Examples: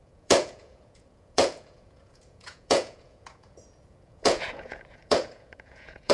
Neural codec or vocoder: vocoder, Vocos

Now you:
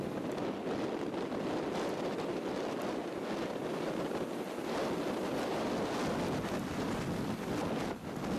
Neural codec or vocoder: none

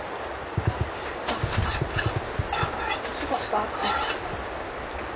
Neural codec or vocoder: none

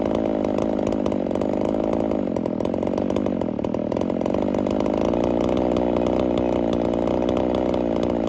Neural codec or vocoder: none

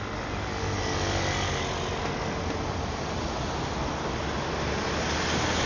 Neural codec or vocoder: none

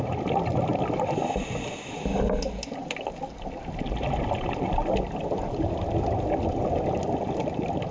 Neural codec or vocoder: none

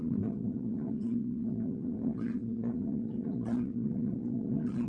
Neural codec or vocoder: vocoder, Vocos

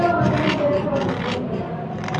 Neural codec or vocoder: none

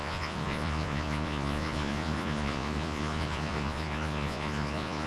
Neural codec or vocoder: vocoder, Vocos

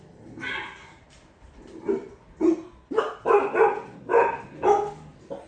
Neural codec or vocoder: none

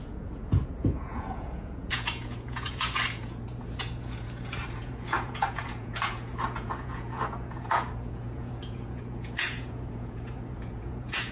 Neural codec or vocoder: vocoder, Vocos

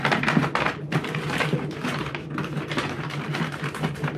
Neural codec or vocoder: none